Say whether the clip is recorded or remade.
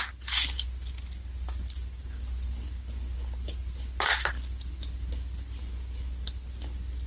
recorded